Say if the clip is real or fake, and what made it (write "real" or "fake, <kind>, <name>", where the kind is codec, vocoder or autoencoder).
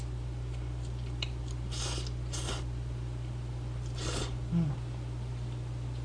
real